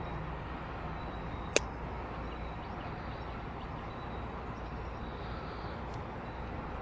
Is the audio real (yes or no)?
yes